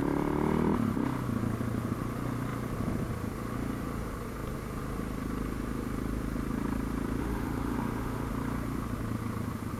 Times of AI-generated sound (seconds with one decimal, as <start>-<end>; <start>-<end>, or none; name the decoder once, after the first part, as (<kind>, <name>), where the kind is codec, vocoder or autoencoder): 7.2-8.3 (autoencoder, DAC-VAE)